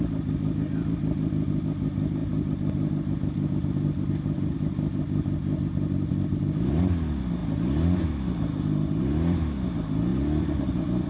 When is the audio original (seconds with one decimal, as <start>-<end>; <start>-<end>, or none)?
0.0-11.1